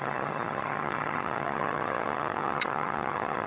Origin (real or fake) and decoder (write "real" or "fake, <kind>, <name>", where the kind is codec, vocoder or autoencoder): fake, vocoder, HiFi-GAN